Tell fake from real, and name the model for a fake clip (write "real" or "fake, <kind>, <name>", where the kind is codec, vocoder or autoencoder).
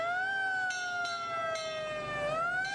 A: real